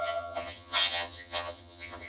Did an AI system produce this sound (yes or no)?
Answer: yes